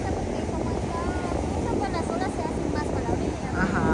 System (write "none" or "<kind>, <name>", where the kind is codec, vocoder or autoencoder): none